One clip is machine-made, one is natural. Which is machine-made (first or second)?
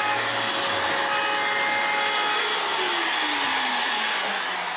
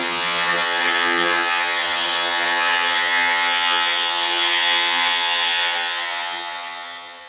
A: second